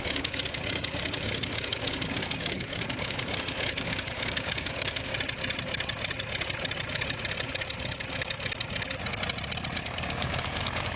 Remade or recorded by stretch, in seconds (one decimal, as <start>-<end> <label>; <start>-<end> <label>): 0.0-5.1 remade; 5.1-9.8 recorded; 9.8-11.0 remade